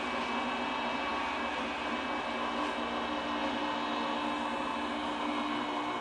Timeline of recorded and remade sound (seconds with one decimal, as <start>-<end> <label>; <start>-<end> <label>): 0.0-6.0 recorded